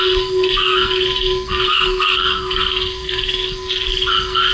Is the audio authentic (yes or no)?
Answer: no